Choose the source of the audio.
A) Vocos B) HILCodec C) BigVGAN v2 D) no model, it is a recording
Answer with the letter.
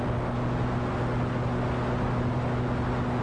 D